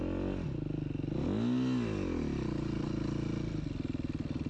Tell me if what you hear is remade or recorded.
recorded